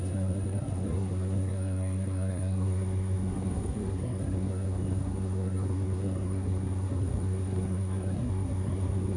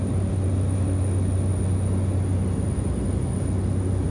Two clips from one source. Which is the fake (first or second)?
first